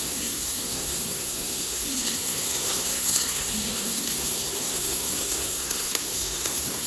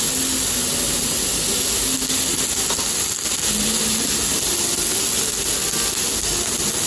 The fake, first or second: first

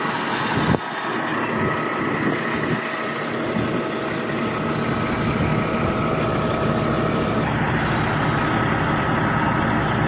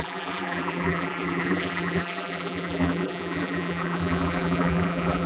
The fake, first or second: second